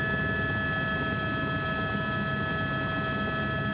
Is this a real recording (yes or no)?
yes